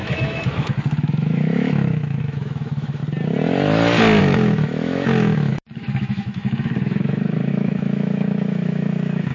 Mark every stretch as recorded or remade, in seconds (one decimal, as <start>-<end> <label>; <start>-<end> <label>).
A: 0.0-3.0 remade; 3.0-4.2 recorded; 4.2-9.3 remade